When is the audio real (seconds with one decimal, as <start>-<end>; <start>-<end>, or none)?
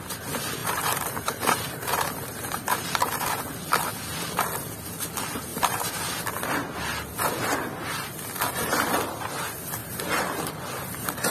0.0-0.6; 3.4-5.5; 6.0-9.8; 10.5-11.3